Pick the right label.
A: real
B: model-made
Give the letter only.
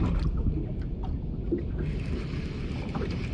A